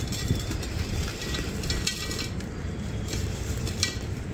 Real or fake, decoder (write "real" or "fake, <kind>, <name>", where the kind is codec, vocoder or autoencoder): fake, vocoder, BigVGAN v2